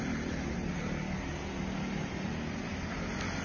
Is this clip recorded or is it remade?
recorded